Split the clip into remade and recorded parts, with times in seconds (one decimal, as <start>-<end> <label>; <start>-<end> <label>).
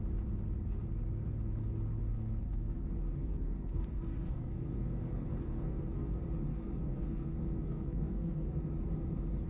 0.0-2.0 recorded; 2.0-6.1 remade; 6.1-6.5 recorded; 6.5-8.6 remade; 8.6-9.5 recorded